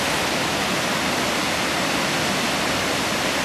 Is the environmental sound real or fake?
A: real